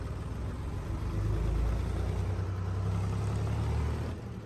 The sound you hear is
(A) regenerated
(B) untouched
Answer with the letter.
B